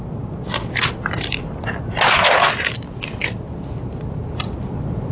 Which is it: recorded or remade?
recorded